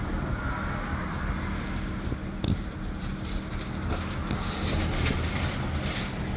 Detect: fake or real real